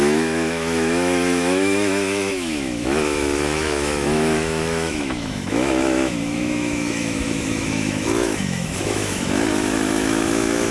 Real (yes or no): no